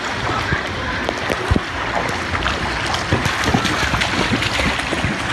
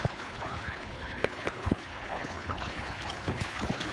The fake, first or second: second